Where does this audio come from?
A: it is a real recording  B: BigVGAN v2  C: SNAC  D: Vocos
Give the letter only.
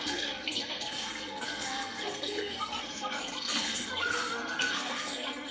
C